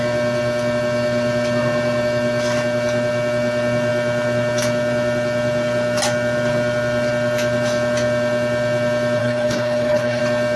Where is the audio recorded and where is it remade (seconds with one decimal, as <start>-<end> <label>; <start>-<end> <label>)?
0.0-9.2 recorded; 9.2-10.2 remade; 10.2-10.6 recorded